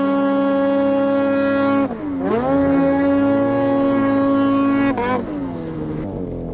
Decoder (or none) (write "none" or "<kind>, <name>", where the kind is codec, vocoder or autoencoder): none